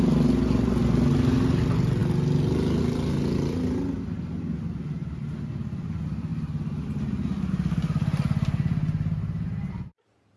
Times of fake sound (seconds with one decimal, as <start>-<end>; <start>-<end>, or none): none